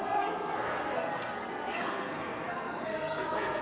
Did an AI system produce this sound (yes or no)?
yes